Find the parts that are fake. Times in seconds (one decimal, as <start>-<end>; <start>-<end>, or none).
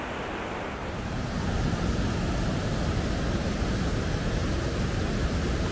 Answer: 0.8-1.9